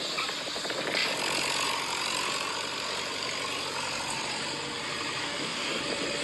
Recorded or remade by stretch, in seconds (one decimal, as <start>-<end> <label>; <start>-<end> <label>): 0.0-5.2 recorded; 5.2-5.8 remade; 5.8-6.2 recorded